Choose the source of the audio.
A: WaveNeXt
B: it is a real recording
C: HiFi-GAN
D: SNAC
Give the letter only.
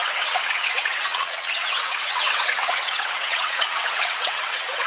A